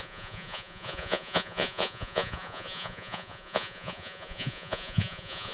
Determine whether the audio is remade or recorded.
remade